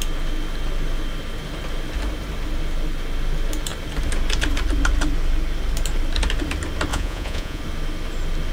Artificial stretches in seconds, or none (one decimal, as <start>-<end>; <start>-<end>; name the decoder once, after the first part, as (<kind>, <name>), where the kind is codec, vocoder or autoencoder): 6.9-7.6 (vocoder, Vocos)